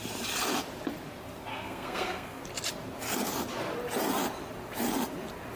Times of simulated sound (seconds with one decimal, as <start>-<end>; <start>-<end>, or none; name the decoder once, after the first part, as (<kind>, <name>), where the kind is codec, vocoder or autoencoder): 1.5-2.4 (codec, SNAC)